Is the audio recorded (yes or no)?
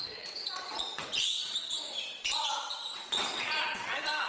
no